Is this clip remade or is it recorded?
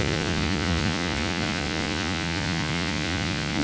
remade